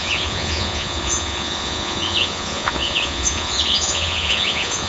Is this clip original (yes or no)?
no